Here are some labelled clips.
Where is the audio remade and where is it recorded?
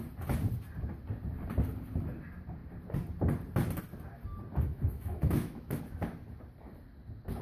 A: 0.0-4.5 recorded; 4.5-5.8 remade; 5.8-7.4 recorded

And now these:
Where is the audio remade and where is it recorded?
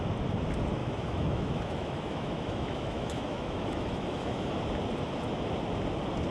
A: 0.0-0.8 recorded; 0.8-4.6 remade; 4.6-6.3 recorded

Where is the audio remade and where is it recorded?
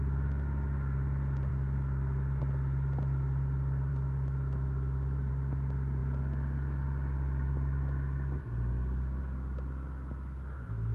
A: 0.0-1.5 recorded; 1.5-2.4 remade; 2.4-3.9 recorded; 3.9-5.3 remade; 5.3-10.9 recorded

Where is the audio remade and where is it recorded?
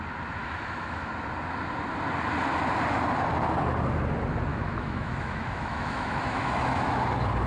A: 0.0-0.4 recorded; 0.4-1.1 remade; 1.1-4.5 recorded; 4.5-7.0 remade; 7.0-7.5 recorded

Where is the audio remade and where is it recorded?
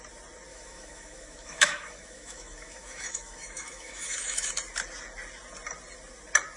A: 0.0-0.5 recorded; 0.5-4.5 remade; 4.5-6.6 recorded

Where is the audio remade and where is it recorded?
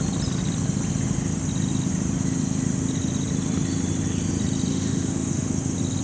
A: 0.0-4.7 recorded; 4.7-5.5 remade; 5.5-6.0 recorded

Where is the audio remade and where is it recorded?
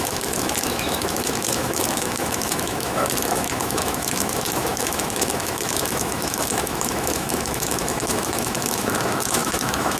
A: 0.0-10.0 remade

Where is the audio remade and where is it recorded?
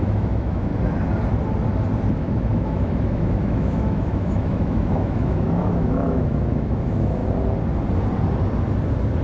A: 0.0-0.7 remade; 0.7-2.1 recorded; 2.1-7.2 remade; 7.2-9.2 recorded